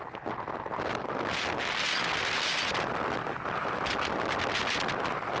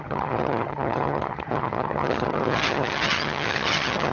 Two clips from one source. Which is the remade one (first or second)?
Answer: second